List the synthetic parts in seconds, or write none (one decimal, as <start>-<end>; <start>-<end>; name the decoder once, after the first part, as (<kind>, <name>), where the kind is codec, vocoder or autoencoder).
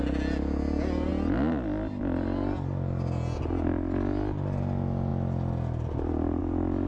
none